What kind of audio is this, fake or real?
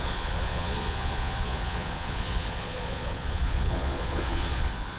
fake